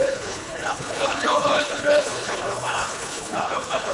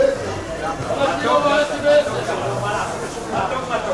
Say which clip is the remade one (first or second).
first